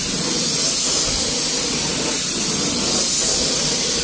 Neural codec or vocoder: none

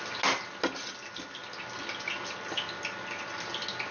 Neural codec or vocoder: none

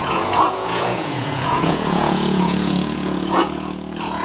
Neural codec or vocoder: vocoder, Vocos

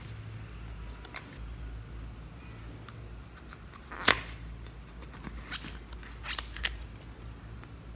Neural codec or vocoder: none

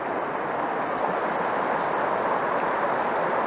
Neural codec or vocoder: none